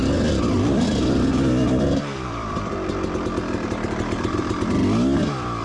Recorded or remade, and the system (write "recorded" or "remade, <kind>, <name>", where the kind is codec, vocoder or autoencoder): remade, vocoder, BigVGAN v2